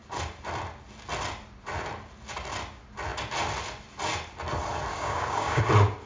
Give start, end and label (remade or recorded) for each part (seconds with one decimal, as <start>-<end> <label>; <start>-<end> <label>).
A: 0.0-4.9 recorded; 4.9-5.6 remade; 5.6-6.1 recorded

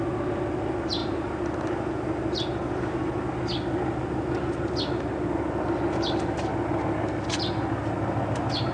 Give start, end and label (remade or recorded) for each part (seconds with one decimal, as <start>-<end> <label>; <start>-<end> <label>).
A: 0.0-8.7 recorded

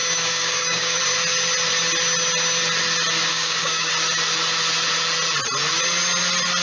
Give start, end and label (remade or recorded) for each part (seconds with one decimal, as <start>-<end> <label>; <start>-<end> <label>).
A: 0.0-1.0 remade; 1.0-3.3 recorded; 3.3-3.9 remade; 3.9-6.6 recorded